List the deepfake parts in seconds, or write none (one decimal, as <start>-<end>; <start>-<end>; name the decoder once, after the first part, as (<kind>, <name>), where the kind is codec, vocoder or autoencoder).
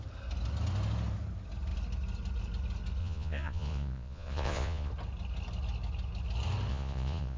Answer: 3.0-4.9 (vocoder, Vocos); 6.7-7.4